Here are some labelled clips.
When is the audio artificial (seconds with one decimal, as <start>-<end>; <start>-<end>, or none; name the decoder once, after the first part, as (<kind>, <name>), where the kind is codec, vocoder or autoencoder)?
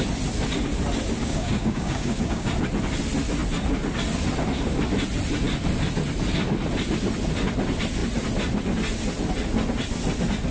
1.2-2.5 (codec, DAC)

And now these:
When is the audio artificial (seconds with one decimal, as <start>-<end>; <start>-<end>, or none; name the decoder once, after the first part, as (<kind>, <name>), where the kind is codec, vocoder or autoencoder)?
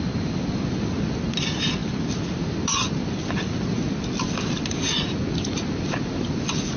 none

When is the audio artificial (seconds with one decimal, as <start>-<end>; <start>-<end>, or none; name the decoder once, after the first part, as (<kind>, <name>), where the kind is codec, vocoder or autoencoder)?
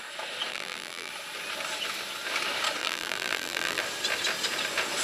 0.5-1.1 (vocoder, BigVGAN v2); 2.8-3.8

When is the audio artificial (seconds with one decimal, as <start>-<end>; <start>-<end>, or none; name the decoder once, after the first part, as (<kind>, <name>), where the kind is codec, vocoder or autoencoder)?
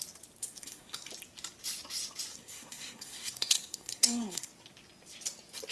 0.4-1.1 (codec, SNAC); 2.3-4.5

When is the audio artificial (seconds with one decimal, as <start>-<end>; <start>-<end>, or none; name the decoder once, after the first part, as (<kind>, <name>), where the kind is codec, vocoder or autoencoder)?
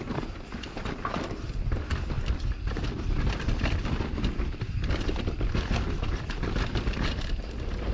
none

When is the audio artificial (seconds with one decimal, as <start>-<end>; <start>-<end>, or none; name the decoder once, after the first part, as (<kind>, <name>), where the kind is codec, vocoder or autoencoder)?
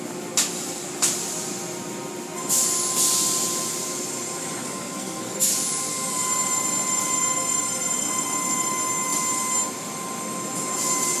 4.6-5.5 (codec, SNAC)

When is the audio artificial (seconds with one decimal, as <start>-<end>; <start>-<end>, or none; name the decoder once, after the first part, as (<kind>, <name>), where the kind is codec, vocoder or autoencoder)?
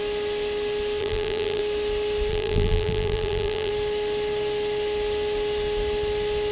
1.0-1.6 (vocoder, BigVGAN v2); 2.3-3.7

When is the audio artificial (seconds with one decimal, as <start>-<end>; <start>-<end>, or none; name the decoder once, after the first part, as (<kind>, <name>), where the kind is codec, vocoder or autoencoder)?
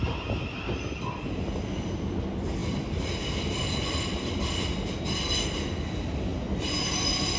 2.6-4.5 (vocoder, BigVGAN v2)